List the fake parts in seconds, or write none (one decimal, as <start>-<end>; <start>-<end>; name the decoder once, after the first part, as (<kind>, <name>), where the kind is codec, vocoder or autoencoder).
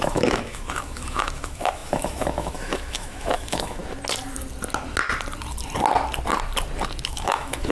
0.0-3.8 (autoencoder, DAC-VAE); 7.1-7.7